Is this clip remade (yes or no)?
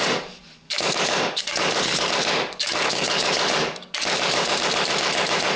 yes